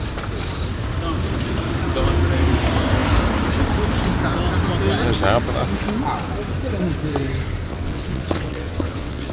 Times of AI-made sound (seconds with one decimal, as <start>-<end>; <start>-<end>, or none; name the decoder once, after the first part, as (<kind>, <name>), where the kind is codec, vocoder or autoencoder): 7.7-9.3 (vocoder, WaveNeXt)